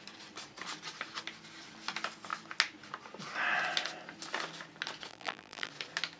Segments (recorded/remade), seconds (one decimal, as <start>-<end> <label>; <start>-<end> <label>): 0.0-5.1 recorded; 5.1-5.7 remade; 5.7-6.2 recorded